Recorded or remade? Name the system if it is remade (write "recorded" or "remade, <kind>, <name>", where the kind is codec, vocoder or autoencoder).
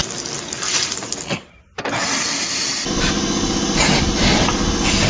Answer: recorded